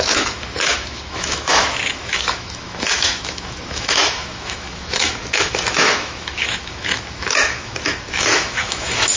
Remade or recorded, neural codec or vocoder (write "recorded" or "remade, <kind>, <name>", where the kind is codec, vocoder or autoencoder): remade, autoencoder, DAC-VAE